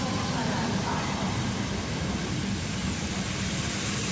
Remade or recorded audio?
recorded